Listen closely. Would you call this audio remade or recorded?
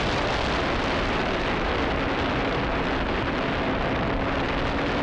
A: recorded